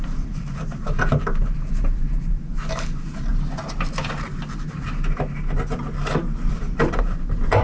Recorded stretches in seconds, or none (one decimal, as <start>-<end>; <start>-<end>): 3.3-6.5